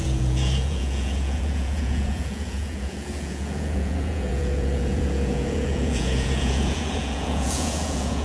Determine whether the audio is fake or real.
fake